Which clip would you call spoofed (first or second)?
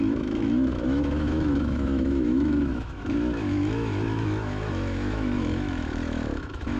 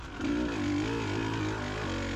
first